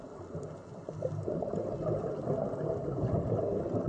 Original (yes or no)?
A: yes